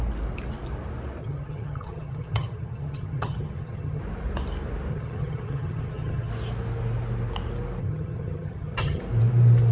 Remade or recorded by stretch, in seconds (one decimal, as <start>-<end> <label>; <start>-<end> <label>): 0.0-1.2 recorded; 1.2-4.0 remade; 4.0-4.9 recorded; 4.9-6.3 remade; 6.3-7.8 recorded; 7.8-9.0 remade; 9.0-9.7 recorded